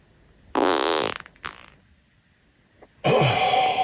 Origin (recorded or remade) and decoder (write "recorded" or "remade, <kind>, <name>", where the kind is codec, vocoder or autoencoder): recorded